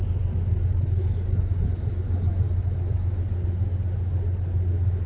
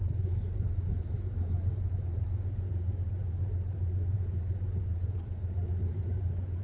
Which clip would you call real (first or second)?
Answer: first